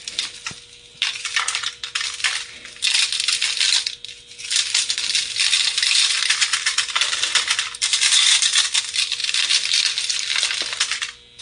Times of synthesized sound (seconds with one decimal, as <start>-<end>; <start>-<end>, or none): none